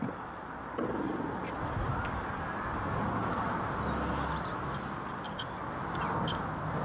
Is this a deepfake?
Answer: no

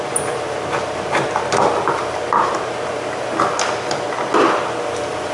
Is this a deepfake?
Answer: no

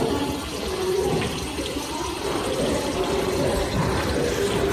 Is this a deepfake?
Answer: no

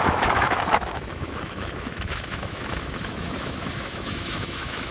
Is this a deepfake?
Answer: yes